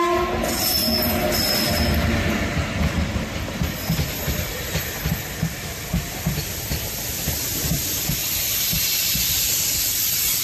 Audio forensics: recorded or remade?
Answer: recorded